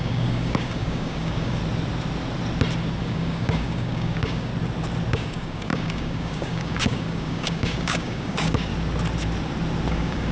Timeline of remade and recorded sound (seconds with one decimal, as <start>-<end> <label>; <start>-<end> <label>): 0.0-1.6 remade; 1.6-3.0 recorded; 3.0-4.5 remade; 4.5-5.1 recorded; 5.1-8.7 remade; 8.7-9.9 recorded; 9.9-10.3 remade